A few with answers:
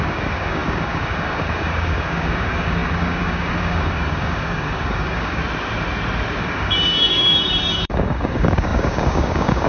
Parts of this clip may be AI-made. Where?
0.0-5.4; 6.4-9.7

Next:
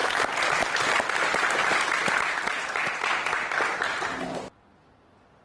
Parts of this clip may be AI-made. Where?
none

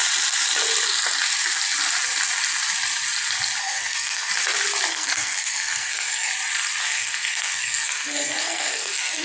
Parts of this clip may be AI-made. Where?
3.6-4.3; 4.9-6.3; 6.8-9.2

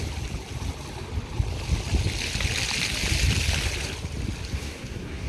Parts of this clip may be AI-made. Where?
4.5-5.3

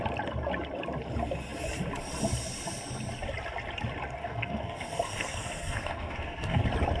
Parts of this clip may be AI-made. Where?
4.2-6.6

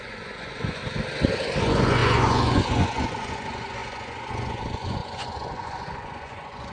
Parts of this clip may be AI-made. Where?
0.0-0.8; 1.6-6.7

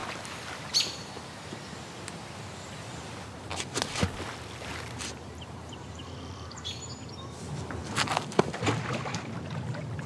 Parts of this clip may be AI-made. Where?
4.6-6.7